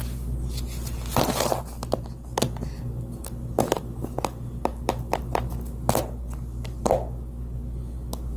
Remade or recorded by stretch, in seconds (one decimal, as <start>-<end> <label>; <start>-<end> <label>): 0.0-8.4 recorded